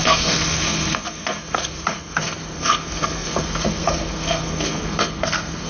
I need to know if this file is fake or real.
fake